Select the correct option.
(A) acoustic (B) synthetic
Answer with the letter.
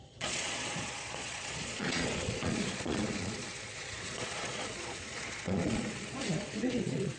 B